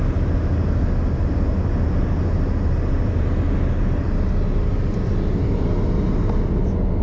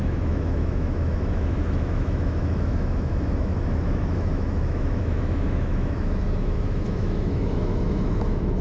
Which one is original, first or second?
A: first